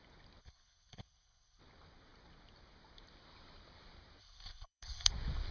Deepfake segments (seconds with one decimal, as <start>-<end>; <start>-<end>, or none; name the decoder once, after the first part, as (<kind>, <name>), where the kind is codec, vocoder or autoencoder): 0.4-1.6 (codec, HILCodec); 4.2-5.1